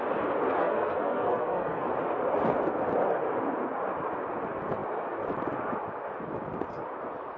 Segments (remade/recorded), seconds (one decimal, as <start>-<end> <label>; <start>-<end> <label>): 0.0-0.6 recorded; 0.6-1.9 remade; 1.9-7.4 recorded